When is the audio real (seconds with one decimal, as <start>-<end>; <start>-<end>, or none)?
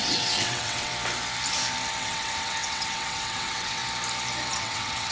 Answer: 0.9-2.0; 3.8-4.5